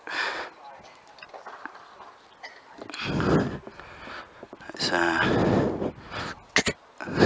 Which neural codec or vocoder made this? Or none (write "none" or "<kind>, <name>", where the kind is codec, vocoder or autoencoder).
none